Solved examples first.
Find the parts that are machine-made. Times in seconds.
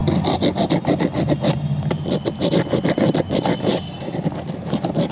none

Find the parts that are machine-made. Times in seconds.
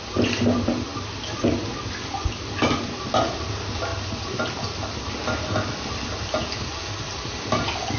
0.9-1.5; 3.9-4.5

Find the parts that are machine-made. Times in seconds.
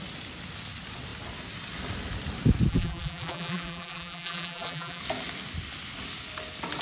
2.7-5.0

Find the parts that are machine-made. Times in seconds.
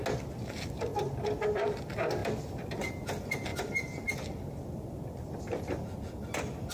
none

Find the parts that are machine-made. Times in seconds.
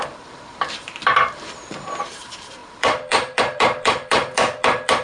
0.0-5.0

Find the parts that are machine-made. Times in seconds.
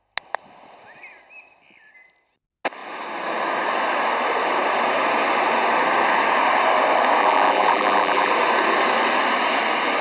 7.2-8.3